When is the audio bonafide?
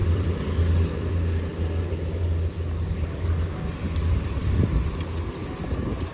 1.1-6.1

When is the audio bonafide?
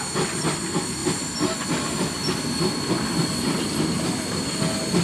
0.0-5.0